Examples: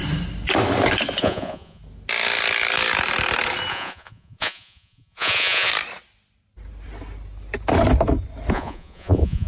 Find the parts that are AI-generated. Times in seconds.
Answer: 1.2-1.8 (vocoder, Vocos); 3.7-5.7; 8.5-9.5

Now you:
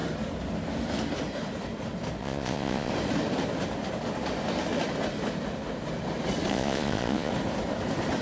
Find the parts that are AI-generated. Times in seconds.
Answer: 2.2-2.9 (vocoder, Vocos); 6.5-7.3

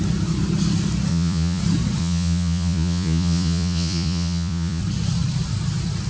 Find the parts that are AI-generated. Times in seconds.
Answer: 1.1-1.6 (vocoder, Vocos); 2.0-4.8

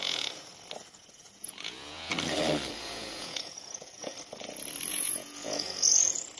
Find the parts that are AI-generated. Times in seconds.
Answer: 0.0-0.5 (vocoder, Vocos); 1.0-2.1; 2.7-4.1; 4.9-6.4

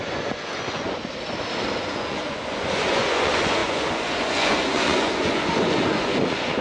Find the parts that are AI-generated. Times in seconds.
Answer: 0.0-1.0 (vocoder, Vocos); 1.8-6.6